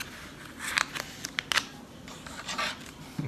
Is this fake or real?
real